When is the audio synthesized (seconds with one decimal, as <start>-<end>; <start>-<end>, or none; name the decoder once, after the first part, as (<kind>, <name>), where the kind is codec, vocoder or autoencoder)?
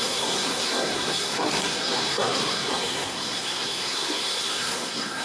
0.0-5.2 (codec, SNAC)